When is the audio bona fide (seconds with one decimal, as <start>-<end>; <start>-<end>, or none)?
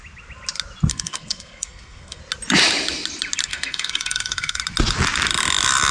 0.0-0.9; 2.2-3.5; 4.6-5.9